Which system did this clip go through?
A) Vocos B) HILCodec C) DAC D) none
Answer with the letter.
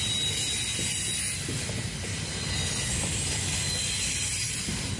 D